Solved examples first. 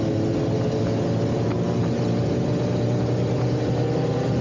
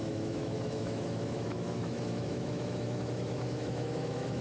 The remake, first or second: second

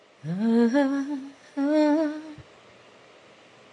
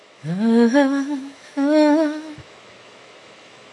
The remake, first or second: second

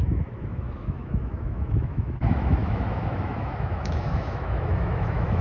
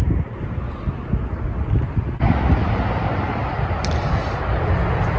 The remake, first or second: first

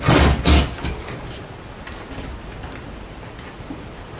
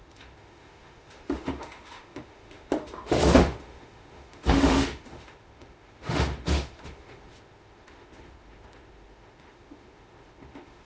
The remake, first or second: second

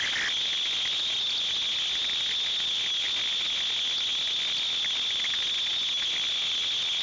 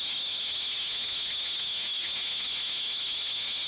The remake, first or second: second